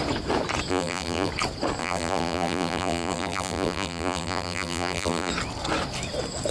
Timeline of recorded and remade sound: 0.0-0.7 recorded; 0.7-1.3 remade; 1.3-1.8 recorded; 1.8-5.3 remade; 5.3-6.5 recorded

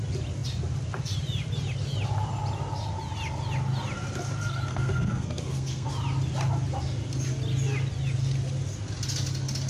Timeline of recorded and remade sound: 0.0-4.7 recorded; 4.7-5.9 remade; 5.9-9.7 recorded

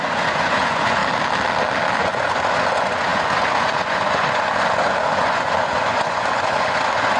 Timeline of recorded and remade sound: 0.0-1.0 remade; 1.0-2.0 recorded; 2.0-7.2 remade

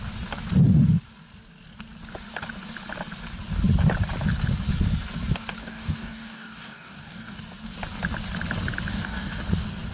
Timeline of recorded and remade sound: 0.0-5.6 recorded; 5.6-7.4 remade; 7.4-8.9 recorded; 8.9-9.4 remade; 9.4-9.9 recorded